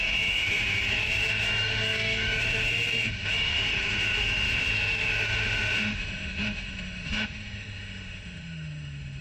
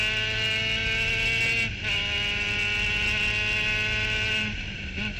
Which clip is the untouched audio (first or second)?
second